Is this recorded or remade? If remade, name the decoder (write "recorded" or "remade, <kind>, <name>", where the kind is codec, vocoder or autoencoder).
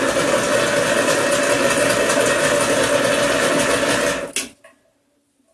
recorded